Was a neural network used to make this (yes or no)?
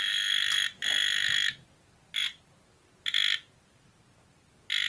no